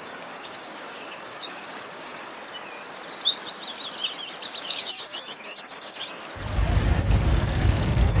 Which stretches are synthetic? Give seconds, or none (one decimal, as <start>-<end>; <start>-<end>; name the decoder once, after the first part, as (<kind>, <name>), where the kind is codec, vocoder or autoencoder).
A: 0.0-2.3 (codec, DAC); 4.6-6.2; 7.3-8.2